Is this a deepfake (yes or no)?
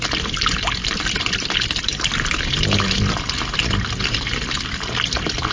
no